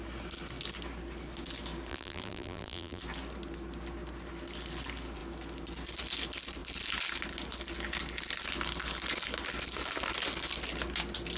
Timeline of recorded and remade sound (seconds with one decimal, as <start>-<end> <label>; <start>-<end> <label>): 0.0-1.9 recorded; 1.9-3.0 remade; 3.0-11.4 recorded